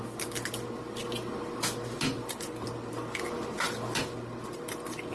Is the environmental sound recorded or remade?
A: recorded